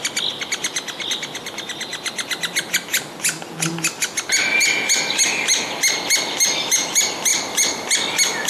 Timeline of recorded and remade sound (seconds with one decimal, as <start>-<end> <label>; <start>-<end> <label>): 0.0-8.5 recorded